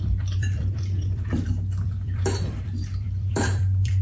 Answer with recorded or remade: remade